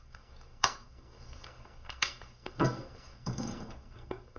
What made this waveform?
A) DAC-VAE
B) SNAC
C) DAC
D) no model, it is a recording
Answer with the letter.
B